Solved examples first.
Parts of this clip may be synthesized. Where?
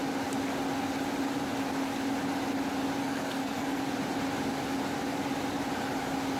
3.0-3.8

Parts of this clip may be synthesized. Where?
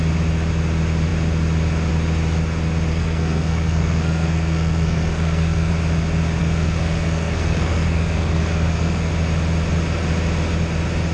2.9-5.7; 6.4-9.1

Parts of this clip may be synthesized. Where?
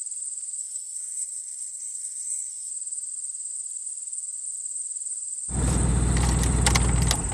0.6-2.7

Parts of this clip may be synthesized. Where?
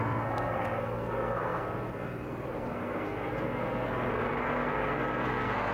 0.0-5.7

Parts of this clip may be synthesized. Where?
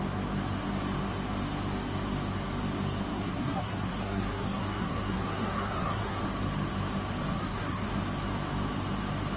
3.1-6.2; 7.3-8.0